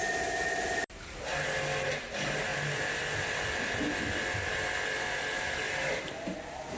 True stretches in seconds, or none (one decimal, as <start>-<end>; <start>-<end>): 0.0-6.8